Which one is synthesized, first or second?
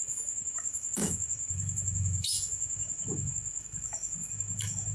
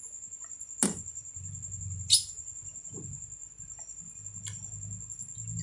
first